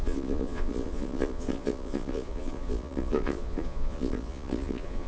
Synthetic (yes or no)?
yes